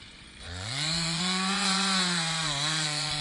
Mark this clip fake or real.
fake